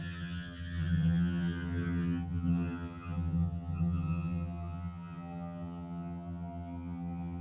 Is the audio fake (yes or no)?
yes